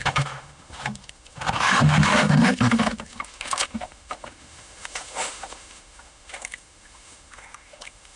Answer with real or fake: fake